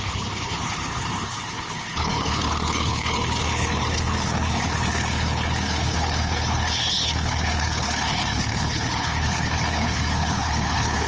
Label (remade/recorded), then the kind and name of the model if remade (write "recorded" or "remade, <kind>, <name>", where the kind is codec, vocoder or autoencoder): remade, codec, HILCodec